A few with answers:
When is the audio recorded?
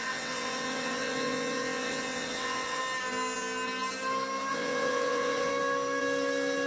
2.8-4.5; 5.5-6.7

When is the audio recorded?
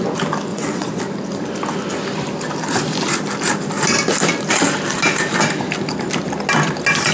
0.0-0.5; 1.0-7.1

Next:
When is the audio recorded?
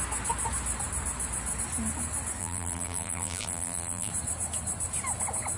0.0-2.4; 4.1-5.6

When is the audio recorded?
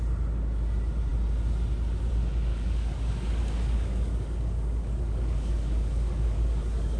0.0-2.5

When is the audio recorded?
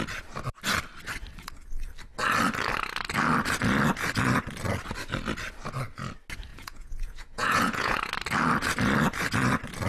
0.0-6.5; 8.1-9.9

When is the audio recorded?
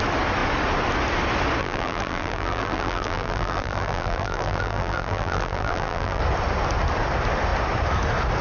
0.0-1.6; 6.2-8.4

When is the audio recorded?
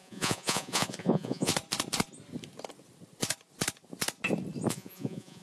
1.5-4.7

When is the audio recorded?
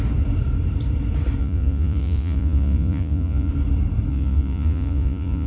0.0-1.4; 3.5-4.1